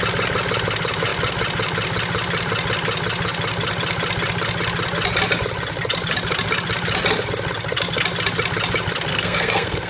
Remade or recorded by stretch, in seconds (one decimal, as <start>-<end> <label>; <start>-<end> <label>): 0.0-9.1 recorded; 9.1-9.9 remade